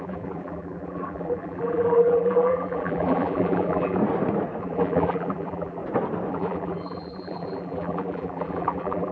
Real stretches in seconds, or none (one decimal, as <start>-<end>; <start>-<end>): 4.0-4.6; 5.8-6.3